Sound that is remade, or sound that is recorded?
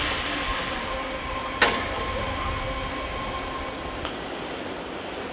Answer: recorded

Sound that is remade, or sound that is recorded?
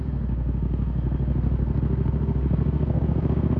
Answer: remade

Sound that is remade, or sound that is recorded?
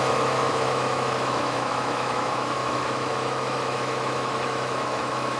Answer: remade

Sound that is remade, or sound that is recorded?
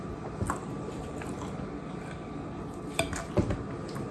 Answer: recorded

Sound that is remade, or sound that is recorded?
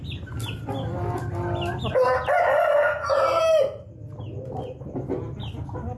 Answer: recorded